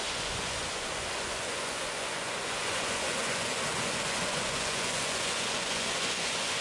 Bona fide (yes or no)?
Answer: no